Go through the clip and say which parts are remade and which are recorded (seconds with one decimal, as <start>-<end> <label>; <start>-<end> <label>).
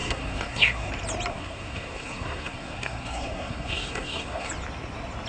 0.0-0.9 remade; 0.9-1.3 recorded; 1.3-4.5 remade; 4.5-5.3 recorded